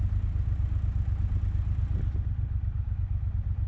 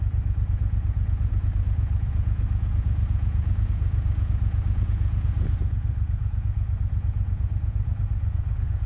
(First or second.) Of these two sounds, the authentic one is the first